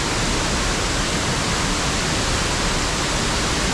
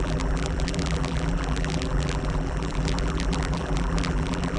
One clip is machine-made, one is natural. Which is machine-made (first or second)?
second